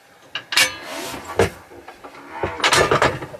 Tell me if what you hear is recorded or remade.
recorded